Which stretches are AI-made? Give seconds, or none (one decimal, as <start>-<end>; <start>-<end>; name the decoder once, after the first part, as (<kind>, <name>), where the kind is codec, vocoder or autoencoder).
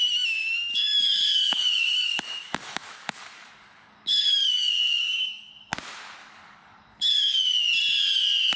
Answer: 0.7-5.5 (codec, DAC); 6.2-7.4